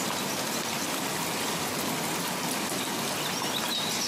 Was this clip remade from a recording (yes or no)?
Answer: no